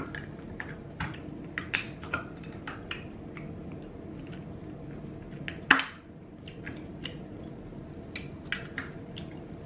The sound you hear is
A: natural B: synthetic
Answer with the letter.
A